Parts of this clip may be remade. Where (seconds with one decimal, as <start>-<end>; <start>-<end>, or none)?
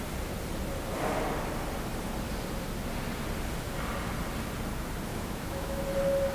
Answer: 5.1-5.8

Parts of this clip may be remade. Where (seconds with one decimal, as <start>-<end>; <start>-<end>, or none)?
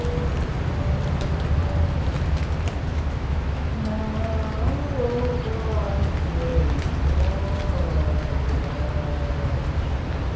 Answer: 2.9-3.7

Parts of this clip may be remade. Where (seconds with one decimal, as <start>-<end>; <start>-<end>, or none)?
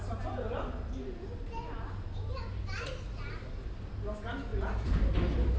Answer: none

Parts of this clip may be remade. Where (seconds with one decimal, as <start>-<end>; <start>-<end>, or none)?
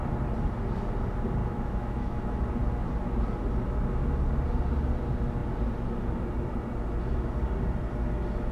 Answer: 1.4-2.3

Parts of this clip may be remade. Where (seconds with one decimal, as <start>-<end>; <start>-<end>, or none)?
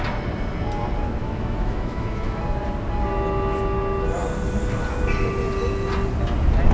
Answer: 1.2-2.4